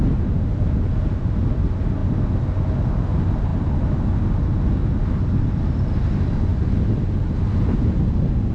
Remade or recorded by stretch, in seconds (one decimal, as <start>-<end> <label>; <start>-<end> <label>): 0.0-8.5 recorded